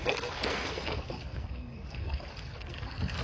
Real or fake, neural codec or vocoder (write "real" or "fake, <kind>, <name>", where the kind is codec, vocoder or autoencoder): fake, codec, SNAC